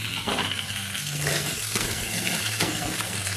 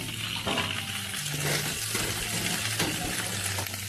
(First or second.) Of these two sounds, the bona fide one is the second